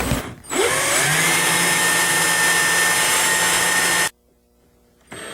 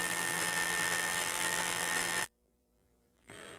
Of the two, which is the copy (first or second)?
second